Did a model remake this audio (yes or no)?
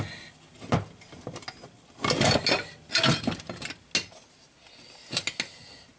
no